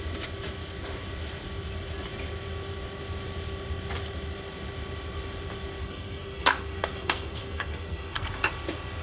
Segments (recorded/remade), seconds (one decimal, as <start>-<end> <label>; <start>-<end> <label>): 0.0-5.8 recorded; 5.8-8.3 remade; 8.3-9.0 recorded